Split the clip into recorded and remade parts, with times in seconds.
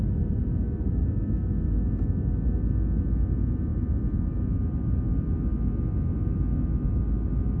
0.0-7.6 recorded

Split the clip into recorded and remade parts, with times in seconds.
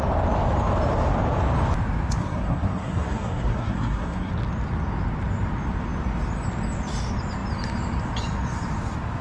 0.0-2.2 recorded; 2.2-4.3 remade; 4.3-9.2 recorded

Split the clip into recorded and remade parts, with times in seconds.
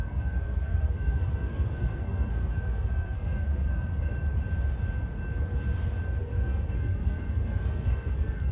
0.0-4.1 remade; 4.1-6.2 recorded; 6.2-8.5 remade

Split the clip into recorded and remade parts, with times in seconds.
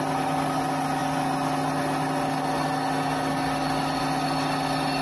0.0-5.0 recorded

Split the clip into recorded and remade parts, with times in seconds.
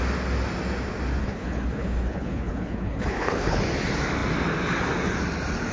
0.0-1.2 recorded; 1.2-3.6 remade; 3.6-5.7 recorded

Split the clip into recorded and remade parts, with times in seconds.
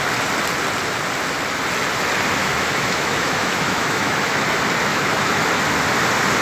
0.0-2.4 recorded; 2.4-4.4 remade; 4.4-4.9 recorded; 4.9-5.5 remade; 5.5-6.4 recorded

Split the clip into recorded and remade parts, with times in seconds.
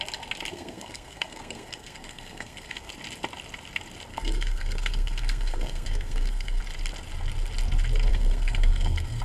0.0-0.5 recorded; 0.5-2.9 remade; 2.9-4.1 recorded; 4.1-6.6 remade; 6.6-8.1 recorded; 8.1-9.2 remade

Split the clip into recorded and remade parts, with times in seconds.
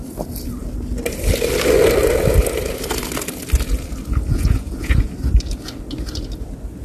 0.0-4.3 recorded; 4.3-5.1 remade; 5.1-6.8 recorded